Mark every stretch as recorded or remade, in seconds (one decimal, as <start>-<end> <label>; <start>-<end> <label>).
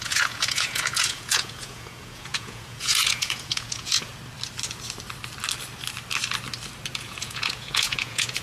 0.0-4.1 remade; 4.1-6.9 recorded; 6.9-8.4 remade